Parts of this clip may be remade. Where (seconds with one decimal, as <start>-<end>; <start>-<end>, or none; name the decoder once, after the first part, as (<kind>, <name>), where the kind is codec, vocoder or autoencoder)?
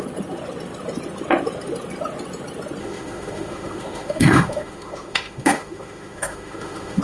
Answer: 2.8-7.0 (autoencoder, DAC-VAE)